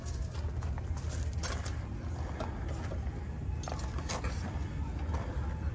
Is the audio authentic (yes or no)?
yes